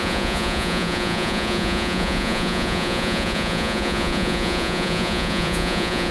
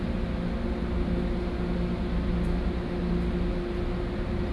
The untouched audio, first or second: second